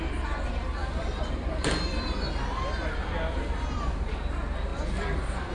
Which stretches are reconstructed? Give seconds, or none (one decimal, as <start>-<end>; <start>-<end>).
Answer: 0.8-4.1; 4.7-5.5